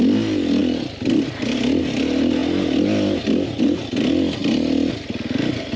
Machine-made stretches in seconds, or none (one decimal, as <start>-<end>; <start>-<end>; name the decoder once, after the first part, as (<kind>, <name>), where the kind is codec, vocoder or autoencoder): none